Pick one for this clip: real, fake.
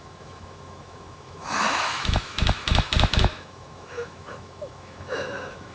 fake